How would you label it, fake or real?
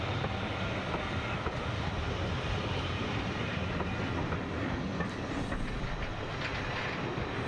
real